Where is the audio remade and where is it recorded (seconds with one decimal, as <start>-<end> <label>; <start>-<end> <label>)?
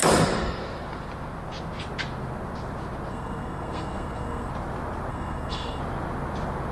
0.0-3.1 recorded; 3.1-4.5 remade; 4.5-5.1 recorded; 5.1-5.8 remade; 5.8-6.7 recorded